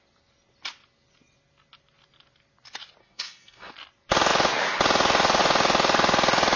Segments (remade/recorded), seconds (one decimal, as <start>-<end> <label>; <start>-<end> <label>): 0.0-3.0 recorded; 3.0-3.7 remade; 3.7-6.6 recorded